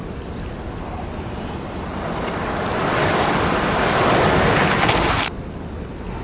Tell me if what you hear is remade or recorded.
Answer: recorded